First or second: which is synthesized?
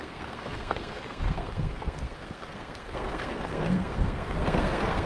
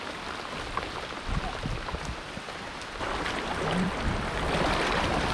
first